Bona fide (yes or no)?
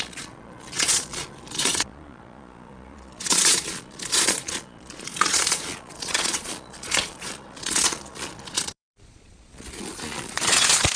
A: no